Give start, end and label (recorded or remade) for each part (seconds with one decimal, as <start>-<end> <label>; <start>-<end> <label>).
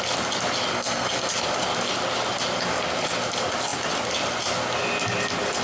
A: 0.0-0.7 recorded; 0.7-1.3 remade; 1.3-5.6 recorded